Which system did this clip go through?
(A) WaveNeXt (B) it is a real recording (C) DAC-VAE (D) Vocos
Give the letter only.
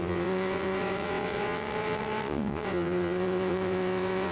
A